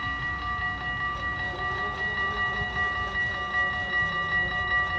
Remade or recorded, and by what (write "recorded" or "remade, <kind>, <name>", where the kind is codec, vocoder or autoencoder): recorded